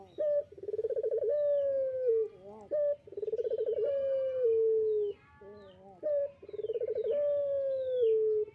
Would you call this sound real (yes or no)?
yes